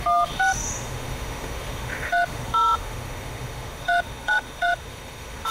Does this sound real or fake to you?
fake